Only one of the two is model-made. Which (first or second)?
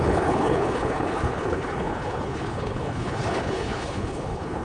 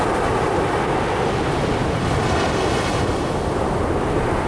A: first